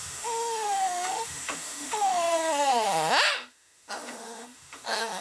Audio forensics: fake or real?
fake